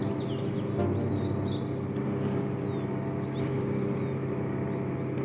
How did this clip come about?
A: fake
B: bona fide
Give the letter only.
B